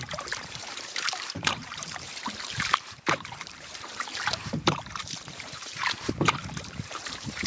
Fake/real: fake